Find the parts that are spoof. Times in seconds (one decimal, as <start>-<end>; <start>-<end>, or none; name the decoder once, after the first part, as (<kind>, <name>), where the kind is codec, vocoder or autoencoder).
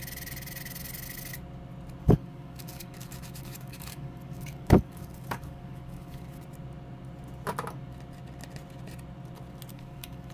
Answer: 2.0-6.4 (codec, DAC); 9.7-10.3